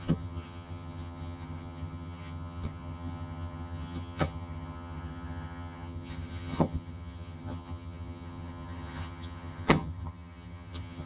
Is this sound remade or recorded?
remade